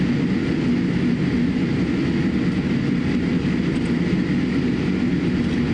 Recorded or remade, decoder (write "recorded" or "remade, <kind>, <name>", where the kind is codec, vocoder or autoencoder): recorded